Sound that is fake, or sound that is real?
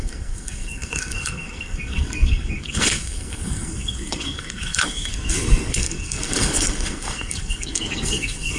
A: fake